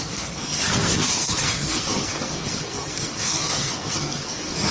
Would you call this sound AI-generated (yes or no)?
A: yes